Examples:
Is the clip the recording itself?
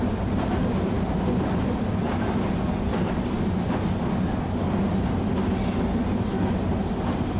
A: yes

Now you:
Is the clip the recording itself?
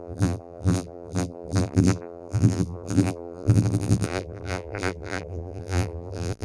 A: no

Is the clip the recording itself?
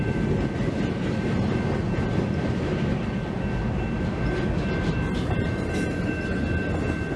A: yes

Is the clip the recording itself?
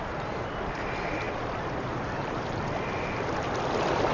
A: yes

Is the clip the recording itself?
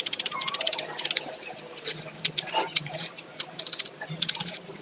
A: no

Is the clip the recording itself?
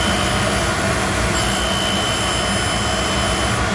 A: yes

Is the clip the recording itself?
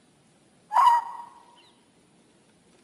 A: yes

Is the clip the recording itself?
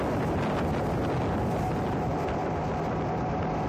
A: yes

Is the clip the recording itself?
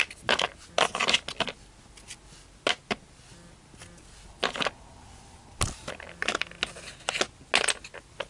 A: yes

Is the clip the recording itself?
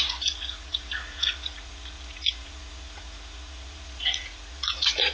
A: no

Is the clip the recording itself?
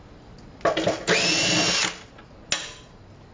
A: yes